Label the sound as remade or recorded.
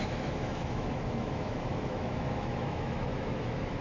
remade